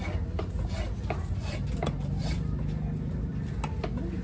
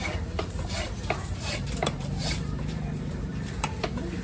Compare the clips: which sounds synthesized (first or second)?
second